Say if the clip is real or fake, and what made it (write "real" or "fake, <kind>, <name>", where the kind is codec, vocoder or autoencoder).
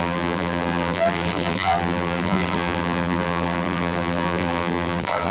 fake, vocoder, BigVGAN v2